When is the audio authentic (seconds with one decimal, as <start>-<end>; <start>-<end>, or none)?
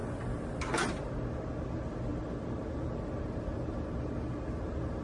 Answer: 0.0-5.0